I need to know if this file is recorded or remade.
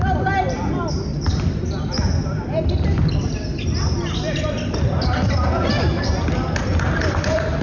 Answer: remade